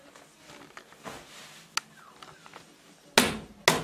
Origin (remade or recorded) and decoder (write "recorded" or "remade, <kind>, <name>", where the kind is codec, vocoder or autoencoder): recorded